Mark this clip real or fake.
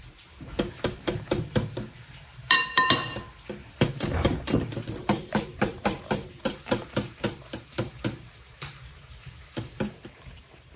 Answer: fake